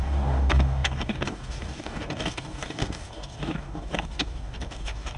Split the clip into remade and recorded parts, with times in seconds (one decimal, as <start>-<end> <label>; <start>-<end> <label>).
0.0-5.2 remade